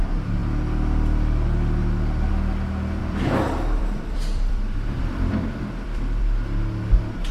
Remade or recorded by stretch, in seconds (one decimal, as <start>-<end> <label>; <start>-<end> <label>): 0.0-3.0 recorded; 3.0-6.2 remade; 6.2-7.3 recorded